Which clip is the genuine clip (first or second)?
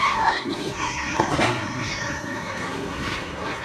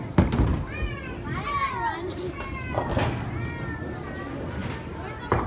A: second